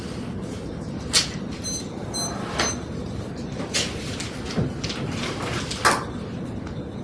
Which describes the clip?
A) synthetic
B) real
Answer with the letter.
B